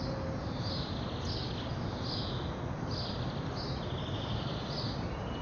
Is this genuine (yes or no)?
yes